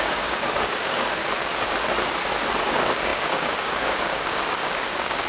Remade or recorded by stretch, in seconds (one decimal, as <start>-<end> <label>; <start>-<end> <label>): 0.0-1.2 remade; 1.2-2.6 recorded; 2.6-5.3 remade